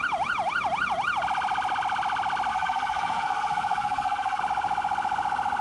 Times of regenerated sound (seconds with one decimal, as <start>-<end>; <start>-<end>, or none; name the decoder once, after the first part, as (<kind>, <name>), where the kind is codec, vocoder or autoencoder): 2.5-4.4 (codec, SNAC)